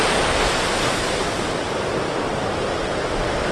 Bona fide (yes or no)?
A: yes